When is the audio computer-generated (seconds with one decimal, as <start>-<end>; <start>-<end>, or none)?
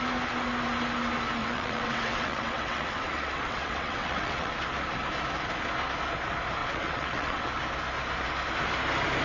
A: 1.4-4.5; 6.6-7.4